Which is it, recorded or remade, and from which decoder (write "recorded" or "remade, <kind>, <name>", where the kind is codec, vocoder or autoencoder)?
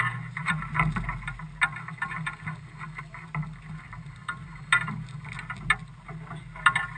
recorded